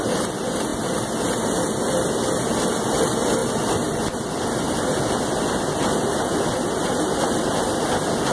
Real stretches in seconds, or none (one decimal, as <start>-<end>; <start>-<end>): 0.0-8.3